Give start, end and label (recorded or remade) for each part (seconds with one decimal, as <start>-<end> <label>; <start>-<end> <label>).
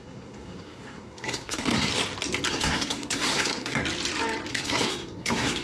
0.0-1.9 remade; 1.9-2.5 recorded; 2.5-3.8 remade; 3.8-4.5 recorded; 4.5-5.6 remade